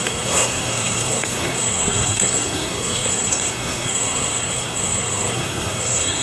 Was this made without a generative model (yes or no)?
no